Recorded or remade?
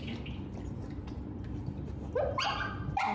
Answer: recorded